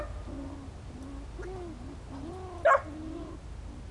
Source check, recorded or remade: recorded